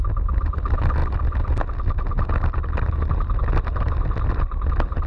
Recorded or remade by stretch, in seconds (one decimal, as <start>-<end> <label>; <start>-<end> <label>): 0.0-5.1 recorded